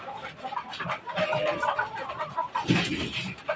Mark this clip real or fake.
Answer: real